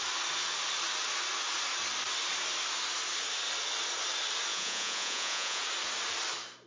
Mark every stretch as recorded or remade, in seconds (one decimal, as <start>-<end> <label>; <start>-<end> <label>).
0.0-4.5 recorded; 4.5-5.6 remade; 5.6-6.7 recorded